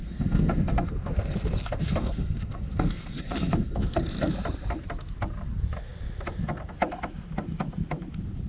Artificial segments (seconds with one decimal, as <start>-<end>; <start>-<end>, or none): 0.0-4.3